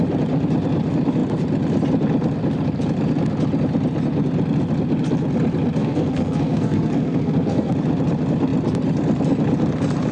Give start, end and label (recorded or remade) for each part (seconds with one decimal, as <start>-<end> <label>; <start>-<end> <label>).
0.0-5.8 recorded; 5.8-7.7 remade; 7.7-10.1 recorded